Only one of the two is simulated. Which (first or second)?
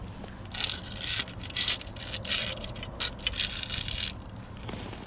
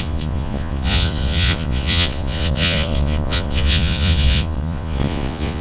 second